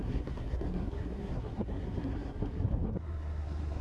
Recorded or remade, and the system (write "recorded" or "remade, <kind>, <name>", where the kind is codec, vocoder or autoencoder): remade, codec, SNAC